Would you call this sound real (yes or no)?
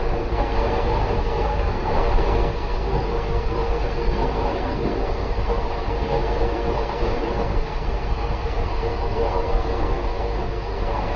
no